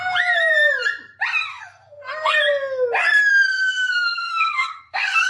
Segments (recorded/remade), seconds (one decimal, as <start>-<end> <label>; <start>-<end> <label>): 0.0-1.5 recorded; 1.5-2.4 remade; 2.4-3.5 recorded; 3.5-5.3 remade